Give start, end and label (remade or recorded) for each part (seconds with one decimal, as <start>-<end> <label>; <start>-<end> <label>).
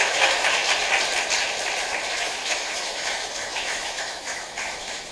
0.0-0.6 remade; 0.6-2.1 recorded; 2.1-5.1 remade